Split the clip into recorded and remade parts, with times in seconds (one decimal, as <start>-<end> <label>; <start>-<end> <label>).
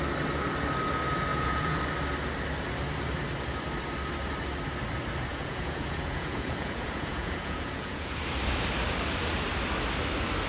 0.0-1.3 recorded; 1.3-1.8 remade; 1.8-5.3 recorded; 5.3-8.2 remade; 8.2-10.5 recorded